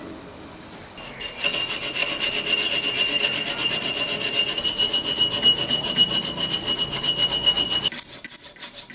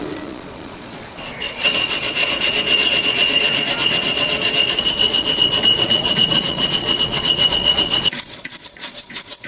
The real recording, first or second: first